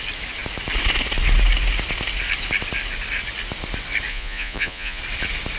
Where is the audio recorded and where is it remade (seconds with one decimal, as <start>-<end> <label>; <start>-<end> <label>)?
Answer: 0.0-4.1 recorded; 4.1-5.0 remade; 5.0-5.6 recorded